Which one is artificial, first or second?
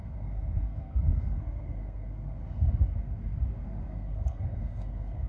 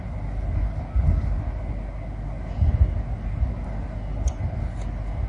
first